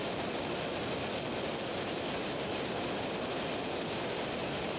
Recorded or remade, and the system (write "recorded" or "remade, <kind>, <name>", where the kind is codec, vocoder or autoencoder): recorded